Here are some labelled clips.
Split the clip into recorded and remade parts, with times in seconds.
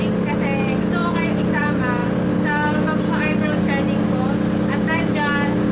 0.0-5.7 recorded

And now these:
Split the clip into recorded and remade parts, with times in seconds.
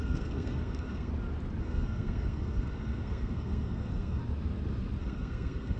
0.0-1.1 remade; 1.1-1.6 recorded; 1.6-4.2 remade; 4.2-5.0 recorded; 5.0-5.8 remade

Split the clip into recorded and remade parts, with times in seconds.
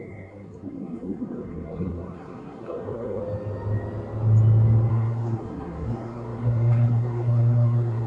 0.0-3.2 remade; 3.2-4.9 recorded; 4.9-8.1 remade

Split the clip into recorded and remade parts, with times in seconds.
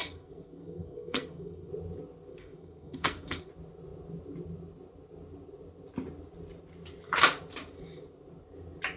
0.0-1.7 remade; 1.7-2.3 recorded; 2.3-3.5 remade; 3.5-9.0 recorded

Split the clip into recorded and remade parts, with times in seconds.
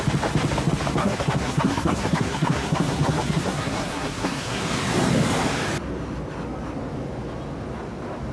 0.0-1.0 recorded; 1.0-4.6 remade; 4.6-8.3 recorded